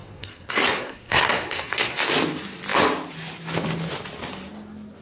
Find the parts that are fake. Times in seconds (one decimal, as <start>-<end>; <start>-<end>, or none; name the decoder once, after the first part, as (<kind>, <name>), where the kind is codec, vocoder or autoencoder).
0.0-2.1 (codec, SNAC)